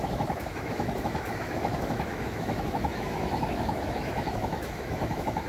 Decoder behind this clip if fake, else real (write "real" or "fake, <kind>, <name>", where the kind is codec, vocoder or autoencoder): fake, autoencoder, DAC-VAE